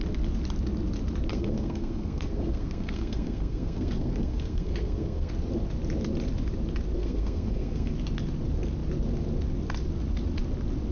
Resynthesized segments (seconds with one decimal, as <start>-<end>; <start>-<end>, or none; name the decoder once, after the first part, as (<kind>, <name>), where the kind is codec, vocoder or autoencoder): 1.3-5.3 (codec, SNAC); 7.0-7.9